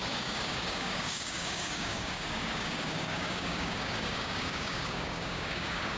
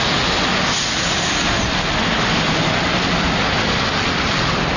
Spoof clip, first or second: first